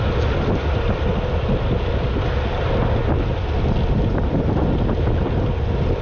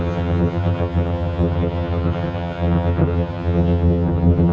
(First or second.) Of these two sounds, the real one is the first